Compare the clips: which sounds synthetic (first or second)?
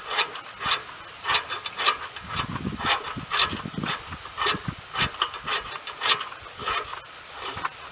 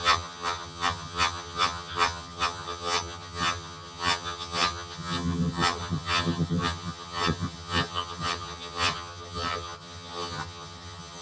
second